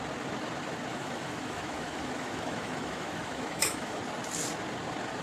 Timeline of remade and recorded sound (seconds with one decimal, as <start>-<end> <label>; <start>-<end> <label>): 0.0-0.9 recorded; 0.9-4.0 remade; 4.0-5.2 recorded